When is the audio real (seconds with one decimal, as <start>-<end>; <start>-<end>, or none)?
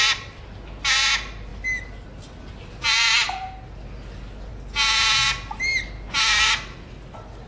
0.0-7.5